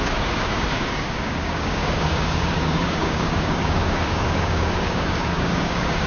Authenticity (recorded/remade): remade